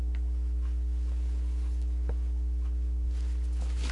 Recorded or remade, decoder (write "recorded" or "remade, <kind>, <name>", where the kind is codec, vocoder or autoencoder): recorded